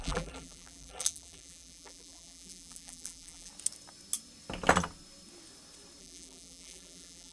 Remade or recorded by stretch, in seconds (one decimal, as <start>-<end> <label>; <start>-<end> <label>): 0.0-3.5 remade; 3.5-6.0 recorded; 6.0-7.3 remade